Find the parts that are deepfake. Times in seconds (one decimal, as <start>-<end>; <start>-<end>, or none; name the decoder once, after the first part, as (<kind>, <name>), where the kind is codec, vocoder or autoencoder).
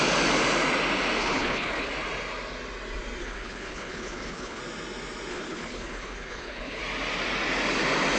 1.2-1.9 (codec, HILCodec); 3.2-4.6; 5.3-6.8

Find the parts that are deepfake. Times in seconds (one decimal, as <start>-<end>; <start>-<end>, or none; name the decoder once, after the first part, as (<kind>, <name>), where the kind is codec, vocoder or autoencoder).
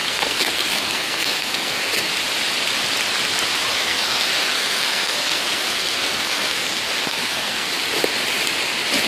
0.0-2.1 (codec, SNAC); 3.7-7.7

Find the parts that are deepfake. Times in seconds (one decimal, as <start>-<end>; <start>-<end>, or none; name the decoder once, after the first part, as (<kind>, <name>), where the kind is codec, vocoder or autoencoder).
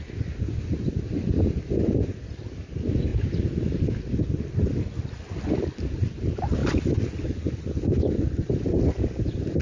none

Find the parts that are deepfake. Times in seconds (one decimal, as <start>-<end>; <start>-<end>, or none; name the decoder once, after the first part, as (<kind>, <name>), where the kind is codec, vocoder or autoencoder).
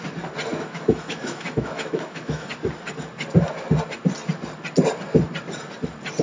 0.5-2.5 (autoencoder, DAC-VAE)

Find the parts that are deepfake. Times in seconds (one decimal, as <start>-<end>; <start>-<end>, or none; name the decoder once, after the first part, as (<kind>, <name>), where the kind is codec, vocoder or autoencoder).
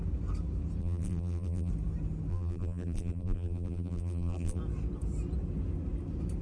0.8-1.7 (vocoder, BigVGAN v2); 2.3-4.6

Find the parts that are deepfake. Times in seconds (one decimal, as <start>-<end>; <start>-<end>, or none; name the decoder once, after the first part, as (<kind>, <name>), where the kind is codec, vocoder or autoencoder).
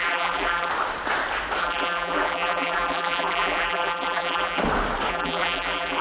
0.0-0.7 (vocoder, BigVGAN v2); 1.6-4.6; 5.1-6.0